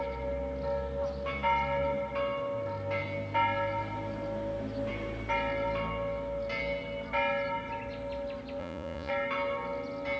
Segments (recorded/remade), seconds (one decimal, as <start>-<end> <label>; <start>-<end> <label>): 0.0-8.6 recorded; 8.6-9.1 remade; 9.1-10.2 recorded